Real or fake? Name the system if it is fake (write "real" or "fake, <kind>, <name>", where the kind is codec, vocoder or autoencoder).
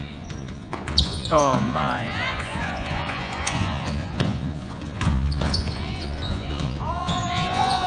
fake, vocoder, Vocos